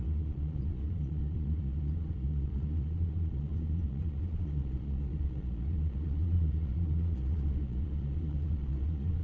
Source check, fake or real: fake